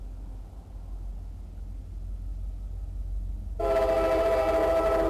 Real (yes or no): yes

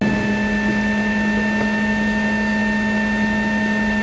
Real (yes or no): yes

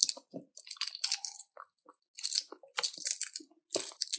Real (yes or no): yes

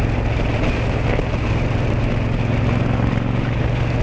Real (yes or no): yes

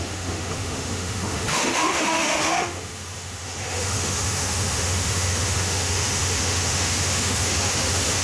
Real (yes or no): no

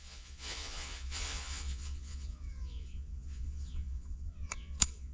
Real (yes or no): no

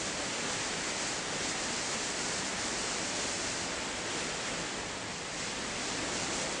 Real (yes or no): no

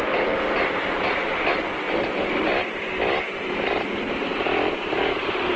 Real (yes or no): yes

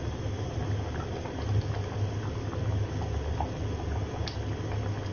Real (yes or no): yes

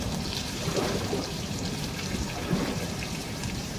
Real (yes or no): no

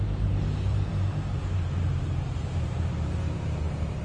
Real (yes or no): no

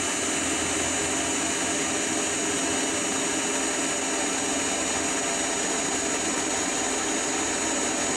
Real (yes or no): yes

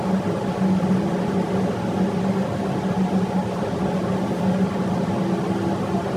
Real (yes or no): yes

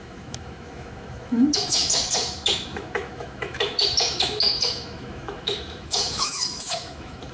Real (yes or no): no